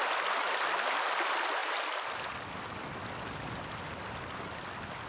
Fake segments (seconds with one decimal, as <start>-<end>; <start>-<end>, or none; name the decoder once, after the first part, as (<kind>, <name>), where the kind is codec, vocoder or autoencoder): none